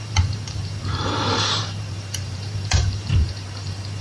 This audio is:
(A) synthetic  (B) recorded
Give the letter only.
A